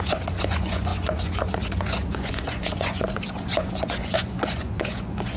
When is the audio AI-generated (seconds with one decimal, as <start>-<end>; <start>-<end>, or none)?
0.0-5.4